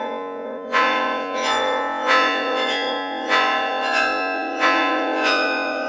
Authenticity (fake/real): fake